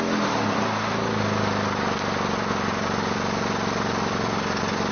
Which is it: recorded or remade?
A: recorded